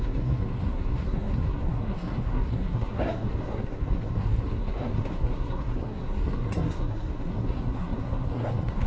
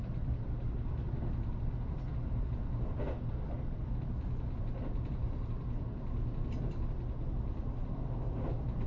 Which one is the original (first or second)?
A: second